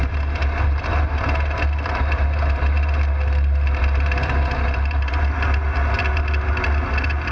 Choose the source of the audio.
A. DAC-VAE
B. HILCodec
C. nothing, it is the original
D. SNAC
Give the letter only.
C